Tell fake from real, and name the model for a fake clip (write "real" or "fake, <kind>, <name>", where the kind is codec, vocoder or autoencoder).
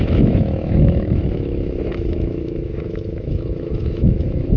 fake, autoencoder, DAC-VAE